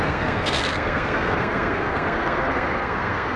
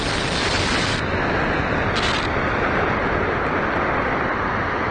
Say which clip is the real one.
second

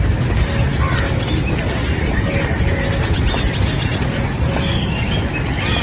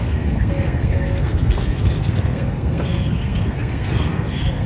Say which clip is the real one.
first